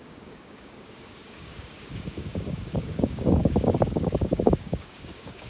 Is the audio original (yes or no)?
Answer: no